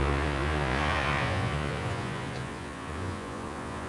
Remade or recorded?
remade